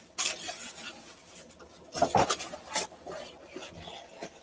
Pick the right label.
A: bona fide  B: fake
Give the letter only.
A